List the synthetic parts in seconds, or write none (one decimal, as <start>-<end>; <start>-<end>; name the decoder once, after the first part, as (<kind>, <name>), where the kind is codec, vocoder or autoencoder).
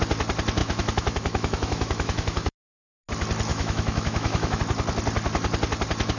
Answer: 0.6-2.6 (autoencoder, DAC-VAE); 3.5-4.6